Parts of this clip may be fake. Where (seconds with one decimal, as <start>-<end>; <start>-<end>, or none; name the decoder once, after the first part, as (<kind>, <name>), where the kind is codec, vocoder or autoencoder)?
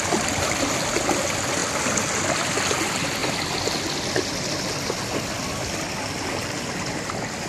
none